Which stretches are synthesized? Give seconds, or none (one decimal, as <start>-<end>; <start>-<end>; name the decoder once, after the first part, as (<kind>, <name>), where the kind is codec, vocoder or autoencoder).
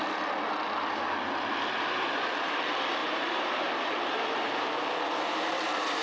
3.0-3.7 (vocoder, BigVGAN v2)